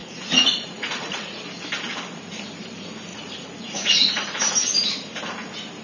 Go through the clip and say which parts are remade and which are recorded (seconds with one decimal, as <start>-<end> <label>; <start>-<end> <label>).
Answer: 0.0-1.4 remade; 1.4-3.1 recorded; 3.1-4.5 remade; 4.5-5.8 recorded